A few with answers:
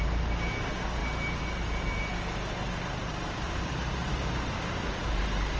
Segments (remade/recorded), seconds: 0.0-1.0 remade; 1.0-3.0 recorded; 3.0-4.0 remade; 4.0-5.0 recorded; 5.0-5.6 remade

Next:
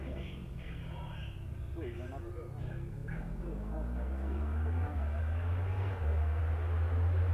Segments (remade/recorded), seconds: 0.0-0.8 remade; 0.8-2.6 recorded; 2.6-6.4 remade; 6.4-7.3 recorded

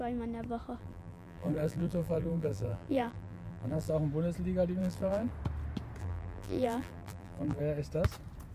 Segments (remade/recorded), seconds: 0.0-0.8 recorded; 0.8-3.9 remade; 3.9-4.8 recorded; 4.8-5.3 remade; 5.3-6.0 recorded; 6.0-7.6 remade; 7.6-8.5 recorded

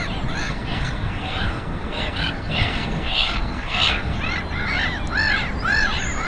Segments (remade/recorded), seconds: 0.0-0.4 recorded; 0.4-4.2 remade; 4.2-6.3 recorded

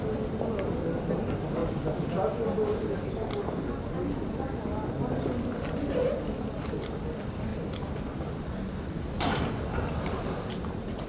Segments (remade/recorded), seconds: 0.0-11.1 recorded

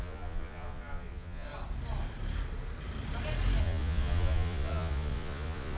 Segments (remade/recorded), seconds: 0.0-1.5 remade; 1.5-3.6 recorded; 3.6-5.8 remade